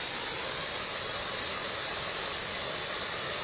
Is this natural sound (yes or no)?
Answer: yes